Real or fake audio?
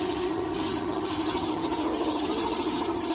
fake